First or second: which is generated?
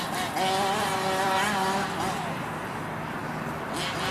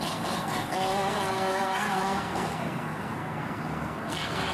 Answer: second